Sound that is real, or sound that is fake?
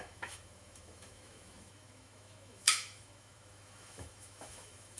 fake